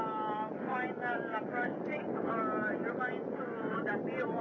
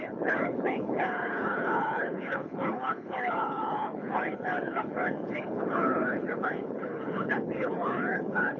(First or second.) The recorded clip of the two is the first